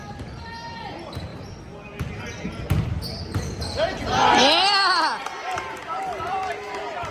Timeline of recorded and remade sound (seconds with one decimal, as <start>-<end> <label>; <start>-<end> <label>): 0.0-7.1 recorded